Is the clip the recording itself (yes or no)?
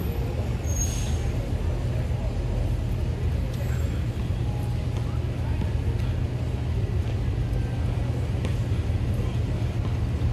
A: yes